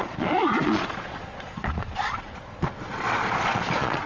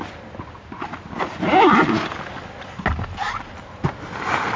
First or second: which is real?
second